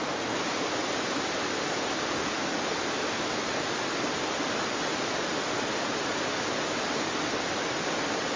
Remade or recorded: recorded